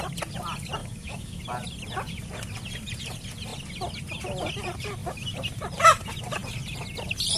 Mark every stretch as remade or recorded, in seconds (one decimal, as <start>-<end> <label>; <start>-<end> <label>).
0.0-0.8 recorded; 0.8-1.4 remade; 1.4-7.4 recorded